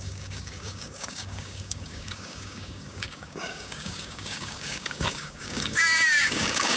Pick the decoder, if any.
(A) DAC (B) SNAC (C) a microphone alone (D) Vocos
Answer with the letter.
A